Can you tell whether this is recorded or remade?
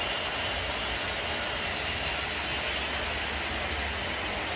recorded